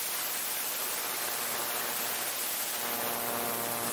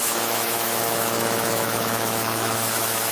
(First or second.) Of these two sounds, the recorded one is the first